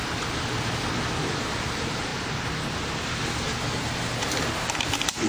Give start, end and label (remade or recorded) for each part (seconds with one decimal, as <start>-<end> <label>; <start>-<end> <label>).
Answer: 0.0-1.2 recorded; 1.2-2.1 remade; 2.1-5.3 recorded